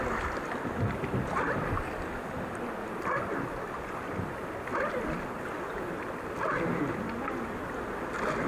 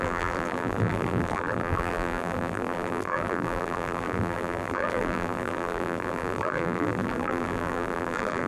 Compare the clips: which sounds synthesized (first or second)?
second